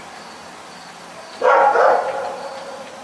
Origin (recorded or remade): recorded